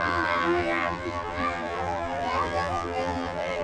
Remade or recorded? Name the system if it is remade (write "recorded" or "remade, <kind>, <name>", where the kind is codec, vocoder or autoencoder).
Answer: remade, vocoder, BigVGAN v2